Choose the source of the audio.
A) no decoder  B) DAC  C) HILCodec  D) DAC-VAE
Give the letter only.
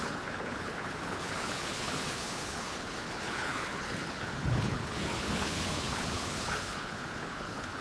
C